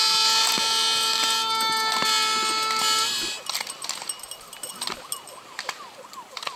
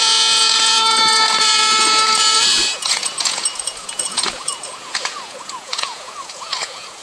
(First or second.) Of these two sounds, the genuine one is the first